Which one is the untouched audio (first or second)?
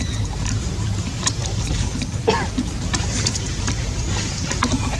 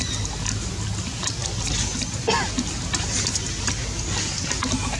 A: second